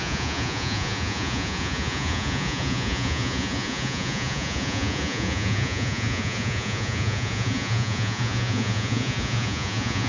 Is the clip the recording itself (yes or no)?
no